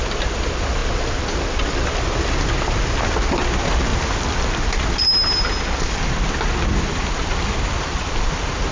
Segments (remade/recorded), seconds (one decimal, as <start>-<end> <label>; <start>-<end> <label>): 0.0-0.8 remade; 0.8-3.4 recorded; 3.4-3.9 remade; 3.9-6.0 recorded; 6.0-8.7 remade